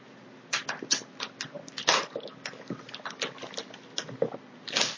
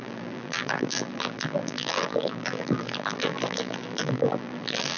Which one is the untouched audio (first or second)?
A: first